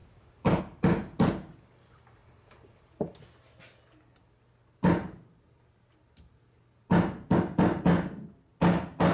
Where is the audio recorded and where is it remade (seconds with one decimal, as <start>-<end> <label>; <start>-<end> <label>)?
0.0-0.6 remade; 0.6-9.1 recorded